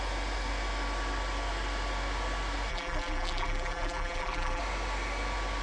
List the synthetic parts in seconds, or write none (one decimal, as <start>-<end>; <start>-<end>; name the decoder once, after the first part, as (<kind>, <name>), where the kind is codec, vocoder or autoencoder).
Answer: 2.7-4.6 (vocoder, BigVGAN v2)